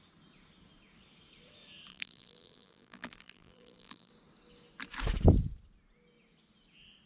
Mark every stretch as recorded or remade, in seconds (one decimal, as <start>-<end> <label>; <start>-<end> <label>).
0.0-1.9 recorded; 1.9-4.1 remade; 4.1-7.1 recorded